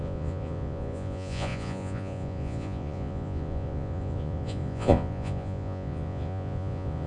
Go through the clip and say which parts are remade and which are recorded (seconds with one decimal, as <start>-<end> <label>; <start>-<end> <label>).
0.0-7.1 remade